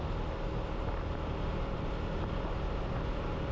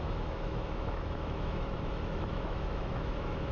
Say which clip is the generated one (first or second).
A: second